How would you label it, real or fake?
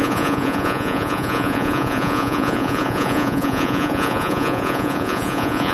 fake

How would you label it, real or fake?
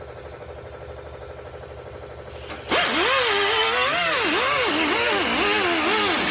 real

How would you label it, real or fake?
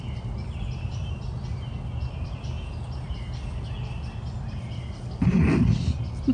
real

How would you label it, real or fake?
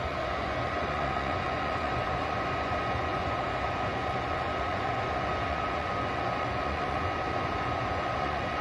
fake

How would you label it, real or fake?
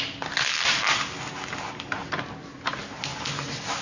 real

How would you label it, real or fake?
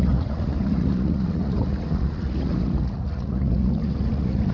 fake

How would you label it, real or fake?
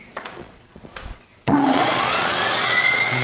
fake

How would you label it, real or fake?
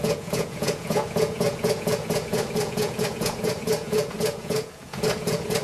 fake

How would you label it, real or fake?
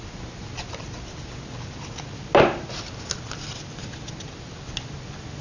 real